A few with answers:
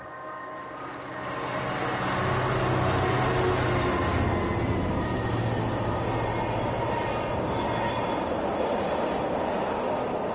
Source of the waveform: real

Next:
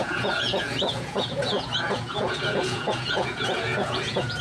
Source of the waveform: fake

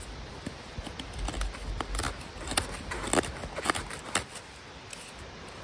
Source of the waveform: real